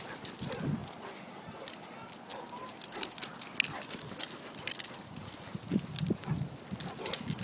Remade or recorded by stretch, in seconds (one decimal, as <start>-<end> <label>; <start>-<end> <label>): 0.0-0.8 remade; 0.8-1.4 recorded; 1.4-2.3 remade; 2.3-5.7 recorded; 5.7-7.4 remade